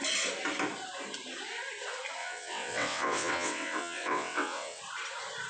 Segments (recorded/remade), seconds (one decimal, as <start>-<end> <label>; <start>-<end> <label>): 0.0-2.2 recorded; 2.2-4.8 remade; 4.8-5.5 recorded